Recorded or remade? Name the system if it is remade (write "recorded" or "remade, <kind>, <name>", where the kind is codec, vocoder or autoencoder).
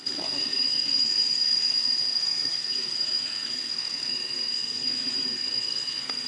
remade, codec, SNAC